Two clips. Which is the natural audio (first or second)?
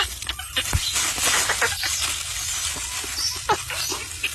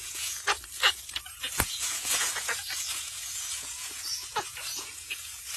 first